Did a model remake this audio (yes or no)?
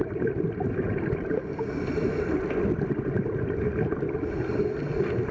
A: no